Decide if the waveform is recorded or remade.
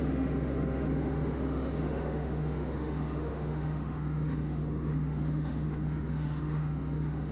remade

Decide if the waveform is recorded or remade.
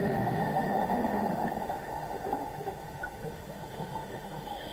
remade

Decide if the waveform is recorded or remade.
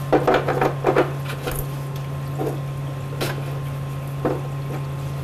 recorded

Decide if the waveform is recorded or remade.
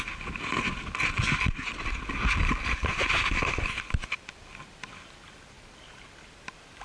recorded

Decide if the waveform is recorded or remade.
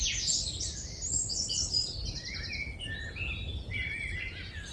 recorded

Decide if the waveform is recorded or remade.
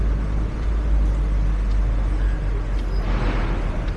recorded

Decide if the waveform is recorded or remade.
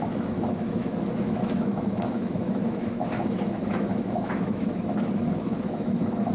remade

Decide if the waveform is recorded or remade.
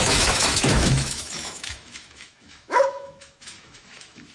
remade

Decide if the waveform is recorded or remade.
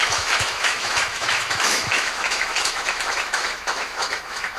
remade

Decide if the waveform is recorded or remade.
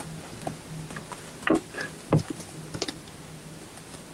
recorded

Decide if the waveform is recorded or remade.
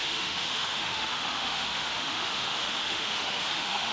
remade